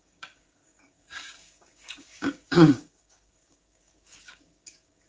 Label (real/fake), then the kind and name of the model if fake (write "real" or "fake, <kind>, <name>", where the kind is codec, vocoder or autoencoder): fake, codec, DAC